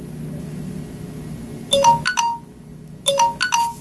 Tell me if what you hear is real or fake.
real